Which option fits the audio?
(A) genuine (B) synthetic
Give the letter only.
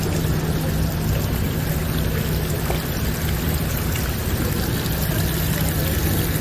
A